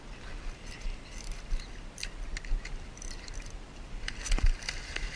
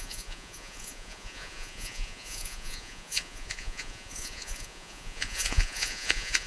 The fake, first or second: second